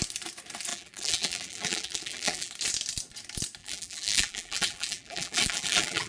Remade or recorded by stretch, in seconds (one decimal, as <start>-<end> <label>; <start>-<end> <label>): 0.0-0.7 recorded; 0.7-2.5 remade; 2.5-3.6 recorded; 3.6-6.1 remade